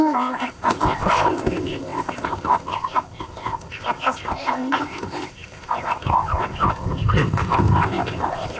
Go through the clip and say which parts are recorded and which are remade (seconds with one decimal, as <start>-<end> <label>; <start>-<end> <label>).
0.0-8.6 remade